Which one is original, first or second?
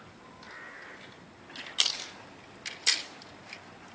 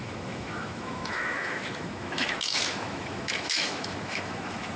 first